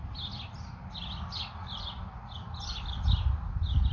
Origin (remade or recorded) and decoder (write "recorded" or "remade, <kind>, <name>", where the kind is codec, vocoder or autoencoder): recorded